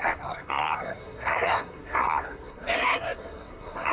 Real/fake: fake